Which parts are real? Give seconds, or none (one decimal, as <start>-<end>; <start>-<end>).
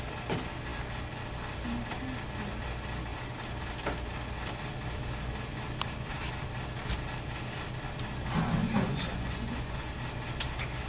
0.0-8.6; 9.9-10.9